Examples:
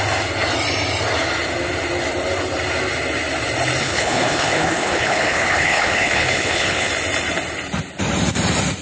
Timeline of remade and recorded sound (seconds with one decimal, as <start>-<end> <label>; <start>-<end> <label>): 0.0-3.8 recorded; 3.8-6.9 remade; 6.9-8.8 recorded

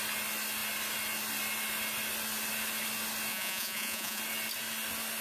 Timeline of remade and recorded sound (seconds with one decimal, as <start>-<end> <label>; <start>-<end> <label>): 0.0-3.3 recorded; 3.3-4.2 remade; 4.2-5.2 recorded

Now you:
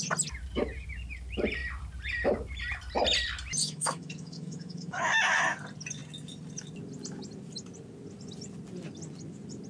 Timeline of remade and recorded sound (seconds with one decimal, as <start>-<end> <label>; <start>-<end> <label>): 0.0-3.6 recorded; 3.6-5.0 remade; 5.0-9.7 recorded